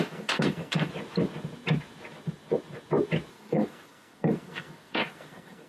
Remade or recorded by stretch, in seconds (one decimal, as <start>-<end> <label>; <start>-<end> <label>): 0.0-0.9 remade; 0.9-3.3 recorded; 3.3-5.7 remade